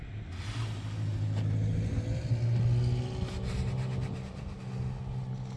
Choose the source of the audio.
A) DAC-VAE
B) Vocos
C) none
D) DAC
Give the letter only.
C